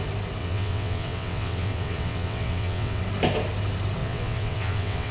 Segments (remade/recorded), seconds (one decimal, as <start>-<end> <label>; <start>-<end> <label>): 0.0-0.4 recorded; 0.4-3.0 remade; 3.0-4.0 recorded; 4.0-5.1 remade

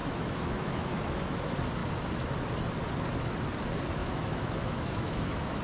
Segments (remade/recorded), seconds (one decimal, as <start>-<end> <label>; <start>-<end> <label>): 0.0-1.4 remade; 1.4-4.0 recorded; 4.0-5.6 remade